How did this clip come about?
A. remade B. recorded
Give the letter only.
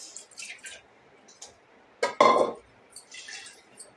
B